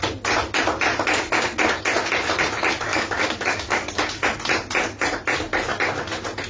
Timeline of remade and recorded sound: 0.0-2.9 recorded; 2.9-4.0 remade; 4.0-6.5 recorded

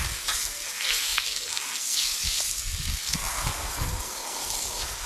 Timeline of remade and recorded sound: 0.0-5.1 remade

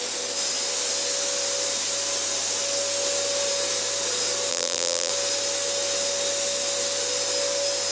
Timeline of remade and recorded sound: 0.0-4.5 recorded; 4.5-5.1 remade; 5.1-7.9 recorded

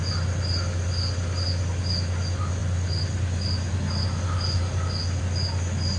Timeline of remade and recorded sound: 0.0-6.0 recorded

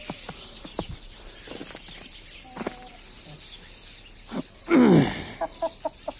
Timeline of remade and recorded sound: 0.0-6.2 recorded

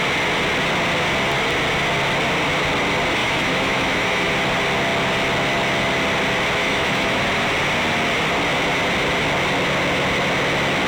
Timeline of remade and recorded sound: 0.0-3.2 recorded; 3.2-4.3 remade; 4.3-6.6 recorded; 6.6-7.2 remade; 7.2-10.9 recorded

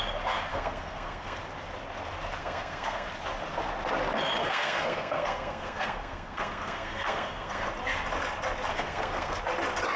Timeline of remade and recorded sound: 0.0-0.5 recorded; 0.5-1.4 remade; 1.4-2.4 recorded; 2.4-3.1 remade; 3.1-4.4 recorded; 4.4-7.7 remade; 7.7-8.7 recorded; 8.7-9.4 remade; 9.4-10.0 recorded